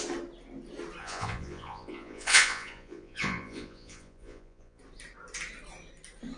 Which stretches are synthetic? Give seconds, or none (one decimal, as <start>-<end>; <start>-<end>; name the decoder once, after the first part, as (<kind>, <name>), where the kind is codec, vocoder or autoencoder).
1.0-4.8 (vocoder, Vocos)

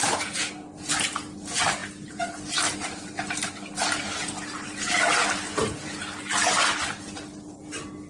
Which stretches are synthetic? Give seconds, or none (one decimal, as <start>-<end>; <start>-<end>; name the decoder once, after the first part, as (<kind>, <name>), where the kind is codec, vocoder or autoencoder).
none

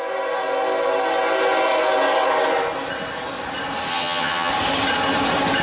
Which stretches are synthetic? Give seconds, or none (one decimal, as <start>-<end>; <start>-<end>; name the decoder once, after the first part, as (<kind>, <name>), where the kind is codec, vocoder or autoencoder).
3.9-4.5 (vocoder, HiFi-GAN)

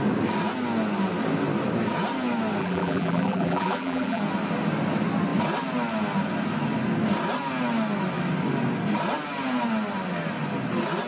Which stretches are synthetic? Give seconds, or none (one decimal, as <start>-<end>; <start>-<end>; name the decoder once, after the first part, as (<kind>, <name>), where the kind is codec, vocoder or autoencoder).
2.6-4.2 (vocoder, BigVGAN v2)